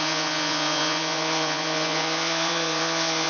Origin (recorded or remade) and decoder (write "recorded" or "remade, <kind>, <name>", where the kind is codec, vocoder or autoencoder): remade, vocoder, Vocos